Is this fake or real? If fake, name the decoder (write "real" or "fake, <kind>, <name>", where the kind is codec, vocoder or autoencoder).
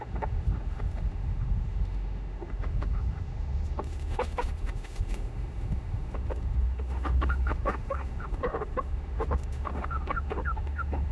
fake, autoencoder, DAC-VAE